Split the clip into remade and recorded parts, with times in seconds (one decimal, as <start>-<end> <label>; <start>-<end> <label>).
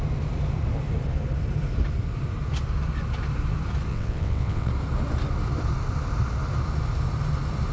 0.0-3.9 recorded; 3.9-4.7 remade; 4.7-7.7 recorded